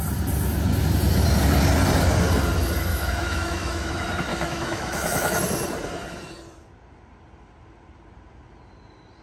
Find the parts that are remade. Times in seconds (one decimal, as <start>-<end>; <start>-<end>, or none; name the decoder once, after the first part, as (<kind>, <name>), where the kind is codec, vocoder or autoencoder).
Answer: 2.9-3.9 (autoencoder, DAC-VAE); 4.3-5.4